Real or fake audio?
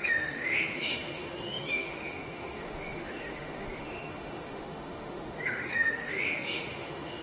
fake